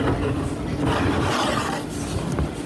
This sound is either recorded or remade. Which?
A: recorded